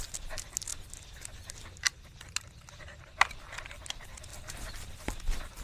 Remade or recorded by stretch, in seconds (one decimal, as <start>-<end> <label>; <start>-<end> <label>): 0.0-4.3 recorded; 4.3-4.9 remade; 4.9-5.6 recorded